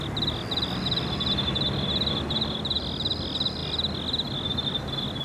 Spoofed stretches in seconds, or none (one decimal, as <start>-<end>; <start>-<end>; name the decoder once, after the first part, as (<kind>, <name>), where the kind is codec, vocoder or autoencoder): none